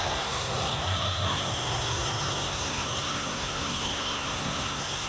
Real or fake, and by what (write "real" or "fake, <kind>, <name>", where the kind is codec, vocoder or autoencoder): fake, codec, SNAC